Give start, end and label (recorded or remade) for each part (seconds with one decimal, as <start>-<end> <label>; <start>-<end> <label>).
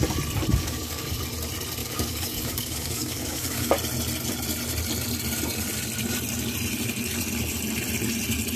0.0-0.5 recorded; 0.5-1.1 remade; 1.1-1.8 recorded; 1.8-3.7 remade; 3.7-8.6 recorded